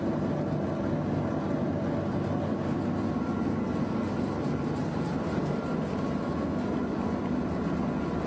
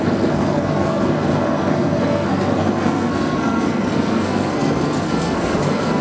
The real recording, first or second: first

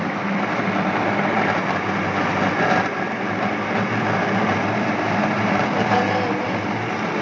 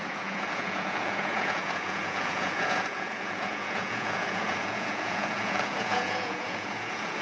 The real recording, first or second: first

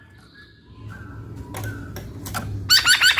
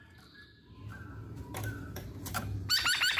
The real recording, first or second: first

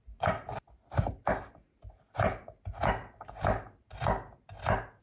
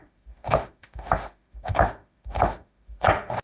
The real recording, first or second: first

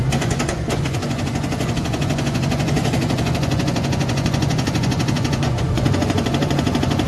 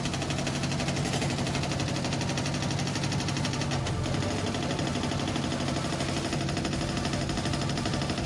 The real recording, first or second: second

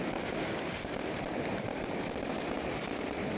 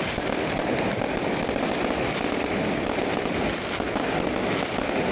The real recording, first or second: second